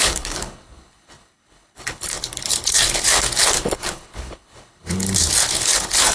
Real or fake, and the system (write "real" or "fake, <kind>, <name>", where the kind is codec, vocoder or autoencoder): fake, codec, HILCodec